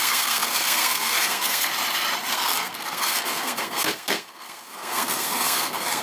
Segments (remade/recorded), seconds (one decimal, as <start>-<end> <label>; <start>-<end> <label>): 0.0-1.7 remade; 1.7-2.3 recorded; 2.3-6.0 remade